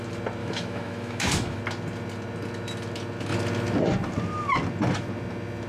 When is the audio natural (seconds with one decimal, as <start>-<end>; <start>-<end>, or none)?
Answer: 0.0-0.4; 1.6-5.7